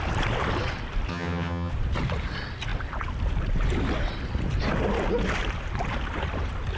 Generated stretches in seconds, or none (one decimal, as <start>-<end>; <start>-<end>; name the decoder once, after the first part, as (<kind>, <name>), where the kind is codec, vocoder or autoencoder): 1.1-1.7 (vocoder, HiFi-GAN)